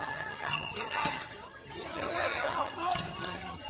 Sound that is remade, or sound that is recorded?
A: remade